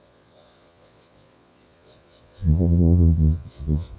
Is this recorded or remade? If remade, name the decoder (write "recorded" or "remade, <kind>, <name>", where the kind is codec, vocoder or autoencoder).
remade, vocoder, Vocos